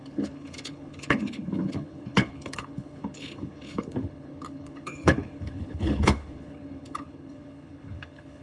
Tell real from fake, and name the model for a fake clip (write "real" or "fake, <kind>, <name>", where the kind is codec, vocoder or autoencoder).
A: fake, codec, HILCodec